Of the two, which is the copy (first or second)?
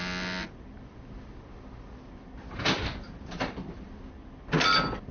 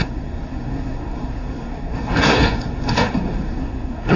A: second